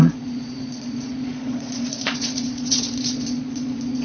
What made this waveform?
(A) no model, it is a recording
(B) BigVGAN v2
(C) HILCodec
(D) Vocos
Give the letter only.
D